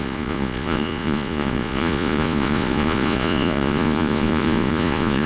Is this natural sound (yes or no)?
no